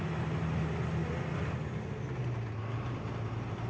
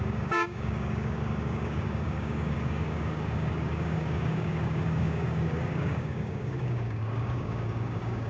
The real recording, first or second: first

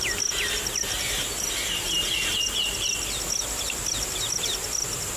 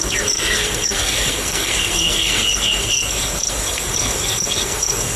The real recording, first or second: first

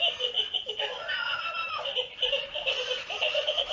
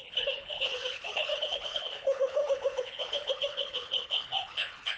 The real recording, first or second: first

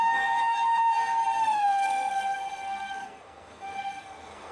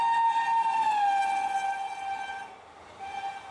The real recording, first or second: second